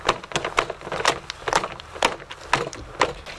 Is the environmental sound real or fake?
real